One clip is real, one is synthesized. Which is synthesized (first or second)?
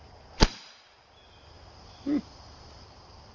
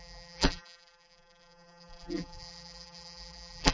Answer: second